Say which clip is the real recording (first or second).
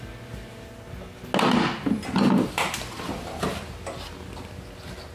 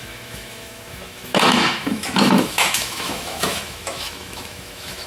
first